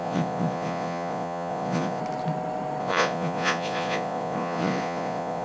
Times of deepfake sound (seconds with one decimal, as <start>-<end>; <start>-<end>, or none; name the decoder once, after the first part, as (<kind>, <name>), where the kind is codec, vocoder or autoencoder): 0.0-2.0 (vocoder, Vocos); 2.8-5.4